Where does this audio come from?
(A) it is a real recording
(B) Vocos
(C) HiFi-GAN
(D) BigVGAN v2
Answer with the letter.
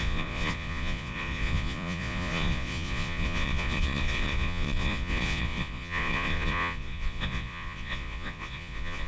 B